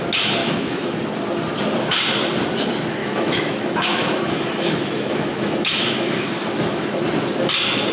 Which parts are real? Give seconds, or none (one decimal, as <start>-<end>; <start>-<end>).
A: 0.0-0.4; 1.0-3.0; 7.0-7.9